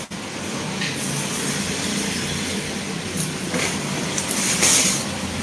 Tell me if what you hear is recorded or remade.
recorded